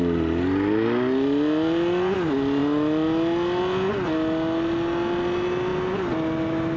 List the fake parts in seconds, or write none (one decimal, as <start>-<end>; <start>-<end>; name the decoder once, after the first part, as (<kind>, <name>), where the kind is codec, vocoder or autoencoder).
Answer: none